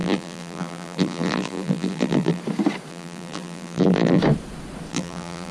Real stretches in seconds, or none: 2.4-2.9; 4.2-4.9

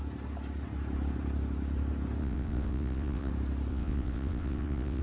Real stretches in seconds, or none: 0.0-2.2; 3.3-3.7

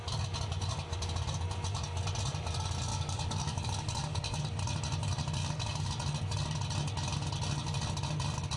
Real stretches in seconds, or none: 0.0-2.9; 4.4-5.4; 5.9-8.6

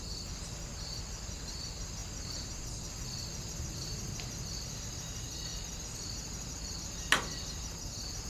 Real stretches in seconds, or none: 0.0-8.3

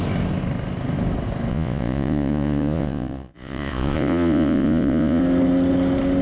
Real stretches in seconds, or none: 0.0-1.5; 5.2-6.2

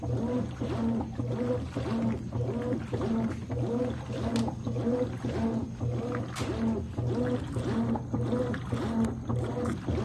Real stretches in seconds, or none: 0.0-10.0

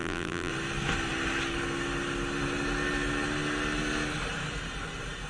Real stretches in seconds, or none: 0.5-5.3